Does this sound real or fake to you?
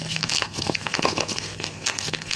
fake